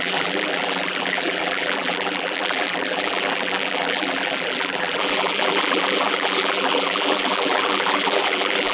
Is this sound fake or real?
fake